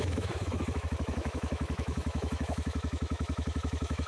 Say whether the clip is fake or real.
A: fake